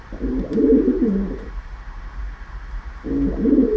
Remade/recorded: recorded